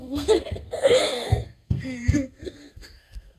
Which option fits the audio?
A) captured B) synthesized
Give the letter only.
B